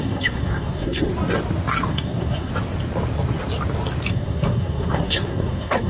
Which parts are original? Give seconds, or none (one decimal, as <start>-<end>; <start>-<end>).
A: 1.1-1.9; 2.5-4.1